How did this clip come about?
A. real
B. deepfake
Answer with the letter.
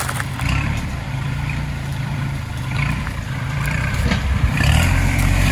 B